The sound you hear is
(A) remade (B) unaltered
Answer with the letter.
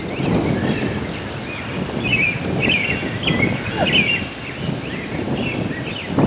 B